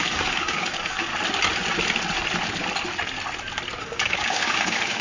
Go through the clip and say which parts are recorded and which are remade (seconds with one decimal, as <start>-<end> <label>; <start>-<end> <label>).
0.0-1.1 remade; 1.1-3.8 recorded; 3.8-5.0 remade